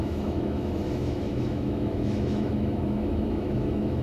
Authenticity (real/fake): fake